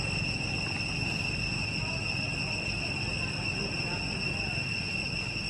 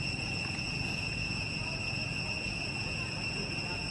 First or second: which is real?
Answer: first